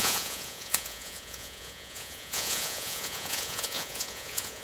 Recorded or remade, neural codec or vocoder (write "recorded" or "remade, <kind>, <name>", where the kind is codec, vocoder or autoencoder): remade, vocoder, Vocos